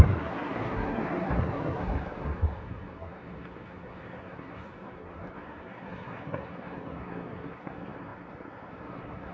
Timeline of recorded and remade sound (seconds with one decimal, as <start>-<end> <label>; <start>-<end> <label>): 0.0-9.3 remade